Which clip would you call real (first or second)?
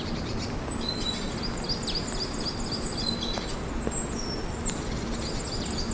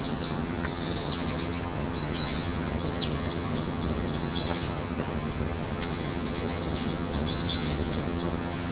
first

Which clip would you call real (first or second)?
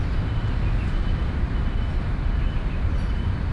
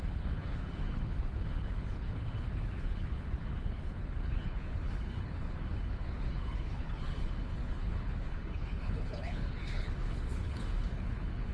first